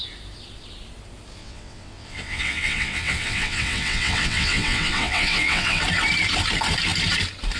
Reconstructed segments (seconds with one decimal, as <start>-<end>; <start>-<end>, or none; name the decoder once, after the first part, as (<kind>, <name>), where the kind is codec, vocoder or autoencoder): 1.4-5.8 (vocoder, WaveNeXt)